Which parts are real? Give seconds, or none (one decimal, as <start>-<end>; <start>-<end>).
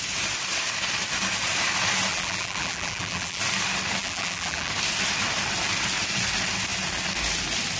0.0-2.1; 3.4-4.0; 4.7-7.8